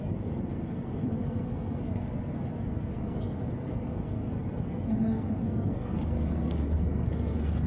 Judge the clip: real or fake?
fake